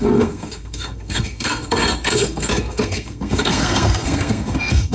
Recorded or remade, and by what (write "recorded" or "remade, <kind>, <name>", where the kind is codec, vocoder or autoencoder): remade, codec, SNAC